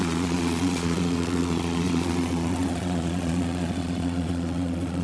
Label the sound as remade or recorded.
remade